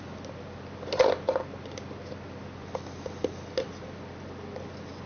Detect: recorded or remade recorded